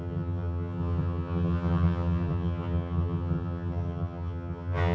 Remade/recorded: remade